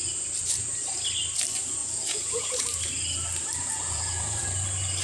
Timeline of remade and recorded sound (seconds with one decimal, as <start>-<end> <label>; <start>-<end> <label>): 0.0-1.8 recorded; 1.8-2.6 remade; 2.6-3.6 recorded; 3.6-4.5 remade; 4.5-5.0 recorded